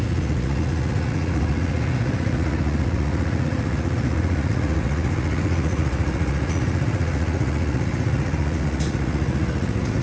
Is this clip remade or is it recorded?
remade